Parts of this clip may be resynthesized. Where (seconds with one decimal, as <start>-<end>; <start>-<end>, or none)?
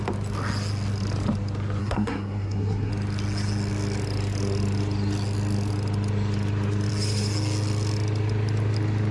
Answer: 1.8-2.9